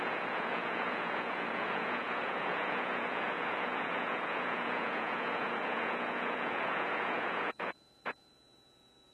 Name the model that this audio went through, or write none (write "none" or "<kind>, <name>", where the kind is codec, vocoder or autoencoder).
vocoder, Vocos